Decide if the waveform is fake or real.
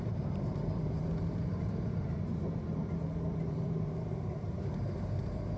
fake